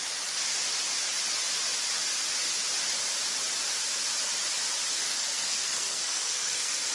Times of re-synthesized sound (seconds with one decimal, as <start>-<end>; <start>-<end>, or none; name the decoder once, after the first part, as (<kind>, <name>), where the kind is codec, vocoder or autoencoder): 5.0-6.9 (codec, SNAC)